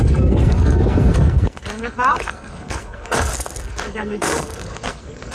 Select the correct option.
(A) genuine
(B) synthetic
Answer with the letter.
B